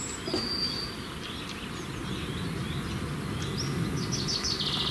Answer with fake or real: real